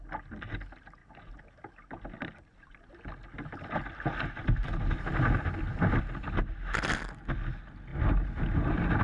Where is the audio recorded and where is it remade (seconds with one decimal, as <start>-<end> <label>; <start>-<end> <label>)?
0.0-9.0 recorded